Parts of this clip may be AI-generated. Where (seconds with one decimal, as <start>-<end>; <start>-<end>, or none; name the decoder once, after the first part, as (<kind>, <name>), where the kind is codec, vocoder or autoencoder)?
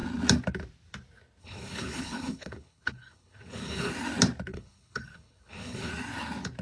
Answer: 1.4-3.9 (codec, HILCodec); 4.5-5.9